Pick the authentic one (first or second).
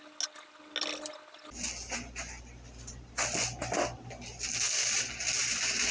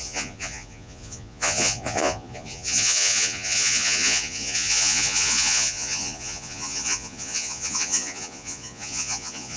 first